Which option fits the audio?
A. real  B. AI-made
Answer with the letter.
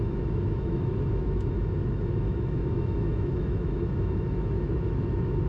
B